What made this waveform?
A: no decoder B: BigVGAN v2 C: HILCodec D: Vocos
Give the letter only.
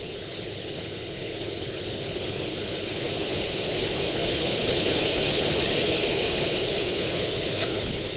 C